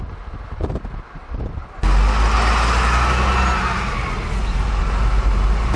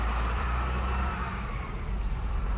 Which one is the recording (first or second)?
first